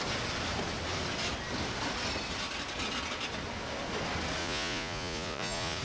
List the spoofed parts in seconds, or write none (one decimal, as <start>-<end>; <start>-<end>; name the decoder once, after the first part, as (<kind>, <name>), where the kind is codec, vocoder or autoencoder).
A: 4.4-5.8 (vocoder, Vocos)